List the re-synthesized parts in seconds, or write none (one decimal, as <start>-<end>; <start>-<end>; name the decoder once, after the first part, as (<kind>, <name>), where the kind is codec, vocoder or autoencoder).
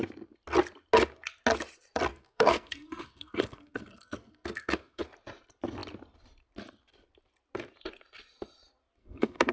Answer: 2.1-5.0 (codec, SNAC); 9.0-9.5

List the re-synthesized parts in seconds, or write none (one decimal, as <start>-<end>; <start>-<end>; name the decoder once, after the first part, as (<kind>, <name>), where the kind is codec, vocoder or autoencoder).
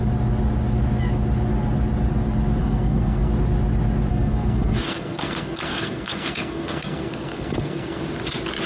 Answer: 2.6-3.3 (codec, SNAC); 4.1-8.0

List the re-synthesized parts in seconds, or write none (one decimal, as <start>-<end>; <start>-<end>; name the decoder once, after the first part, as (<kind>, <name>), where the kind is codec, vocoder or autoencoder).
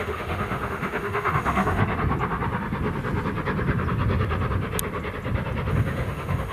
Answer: 0.0-1.8 (autoencoder, DAC-VAE); 5.7-6.5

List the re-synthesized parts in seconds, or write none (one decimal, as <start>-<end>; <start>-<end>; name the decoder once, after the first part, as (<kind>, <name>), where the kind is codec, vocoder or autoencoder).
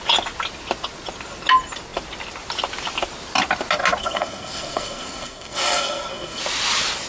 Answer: 4.0-6.4 (codec, SNAC)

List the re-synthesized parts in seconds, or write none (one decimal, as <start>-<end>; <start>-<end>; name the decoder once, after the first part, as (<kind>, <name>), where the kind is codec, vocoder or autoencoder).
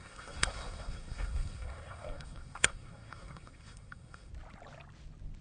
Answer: 0.0-4.3 (codec, SNAC)